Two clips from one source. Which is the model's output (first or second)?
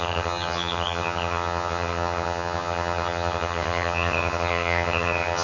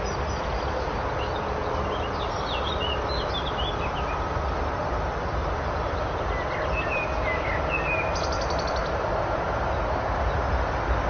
first